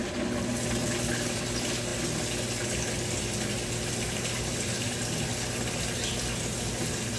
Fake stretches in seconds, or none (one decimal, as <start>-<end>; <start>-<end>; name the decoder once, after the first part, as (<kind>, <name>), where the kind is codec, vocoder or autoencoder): none